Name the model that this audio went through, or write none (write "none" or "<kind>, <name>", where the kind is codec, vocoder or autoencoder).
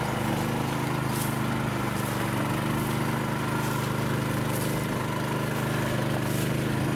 none